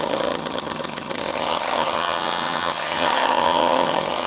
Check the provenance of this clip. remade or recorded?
remade